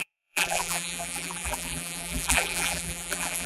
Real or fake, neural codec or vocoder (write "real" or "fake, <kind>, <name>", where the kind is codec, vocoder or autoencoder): fake, vocoder, BigVGAN v2